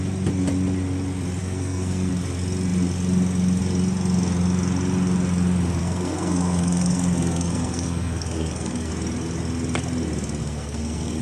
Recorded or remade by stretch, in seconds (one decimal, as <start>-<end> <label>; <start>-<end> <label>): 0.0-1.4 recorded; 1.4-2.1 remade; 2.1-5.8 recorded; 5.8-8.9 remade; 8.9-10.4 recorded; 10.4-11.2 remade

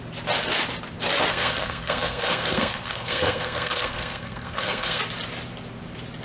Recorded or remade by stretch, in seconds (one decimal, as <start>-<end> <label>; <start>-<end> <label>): 0.0-1.3 recorded; 1.3-5.0 remade; 5.0-6.2 recorded

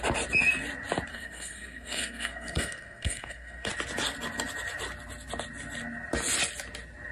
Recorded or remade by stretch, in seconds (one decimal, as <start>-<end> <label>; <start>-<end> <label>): 0.0-1.1 recorded; 1.1-3.7 remade; 3.7-7.1 recorded

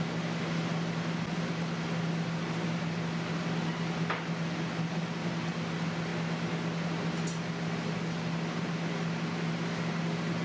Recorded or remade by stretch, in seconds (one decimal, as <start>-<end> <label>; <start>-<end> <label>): 0.0-10.4 recorded